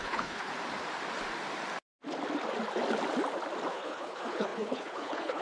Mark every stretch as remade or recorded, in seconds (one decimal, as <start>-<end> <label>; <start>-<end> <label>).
0.0-0.5 remade; 0.5-3.7 recorded; 3.7-5.4 remade